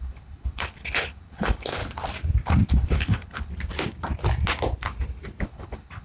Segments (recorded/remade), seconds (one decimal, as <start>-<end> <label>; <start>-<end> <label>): 0.0-1.8 remade; 1.8-2.7 recorded; 2.7-3.5 remade; 3.5-5.4 recorded; 5.4-6.0 remade